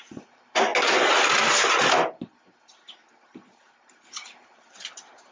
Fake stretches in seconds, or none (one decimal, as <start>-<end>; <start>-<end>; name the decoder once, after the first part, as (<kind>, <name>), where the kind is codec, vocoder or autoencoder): 0.0-0.7 (vocoder, BigVGAN v2); 3.6-5.3